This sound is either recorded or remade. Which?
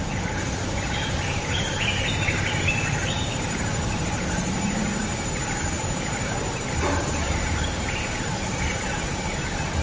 remade